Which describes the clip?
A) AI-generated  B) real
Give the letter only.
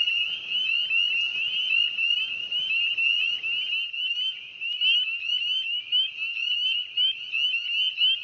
B